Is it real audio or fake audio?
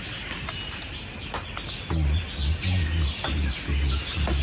real